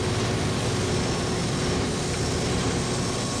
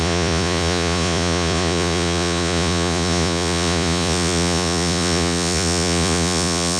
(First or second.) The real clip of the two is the first